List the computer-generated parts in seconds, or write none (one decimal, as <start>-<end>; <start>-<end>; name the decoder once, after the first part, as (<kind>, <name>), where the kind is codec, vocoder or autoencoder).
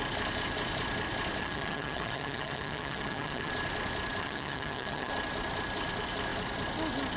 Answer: 1.4-3.5 (vocoder, HiFi-GAN); 4.2-5.1